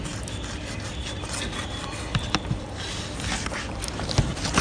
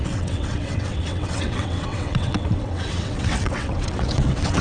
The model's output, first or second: second